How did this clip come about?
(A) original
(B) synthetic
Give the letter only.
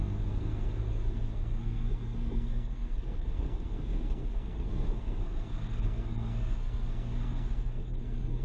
B